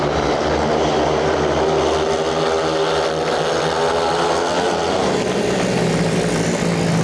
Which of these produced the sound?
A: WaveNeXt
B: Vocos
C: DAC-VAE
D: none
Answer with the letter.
D